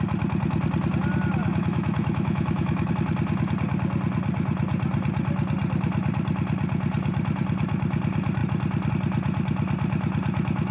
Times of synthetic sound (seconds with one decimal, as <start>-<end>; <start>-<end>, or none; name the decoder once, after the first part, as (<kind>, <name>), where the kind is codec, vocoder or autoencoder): 1.4-2.9 (autoencoder, DAC-VAE)